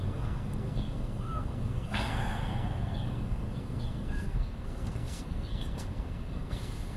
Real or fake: fake